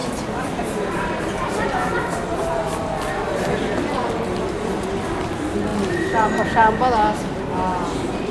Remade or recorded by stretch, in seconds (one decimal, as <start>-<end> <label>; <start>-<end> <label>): 0.0-0.6 recorded; 0.6-2.6 remade; 2.6-5.3 recorded; 5.3-8.3 remade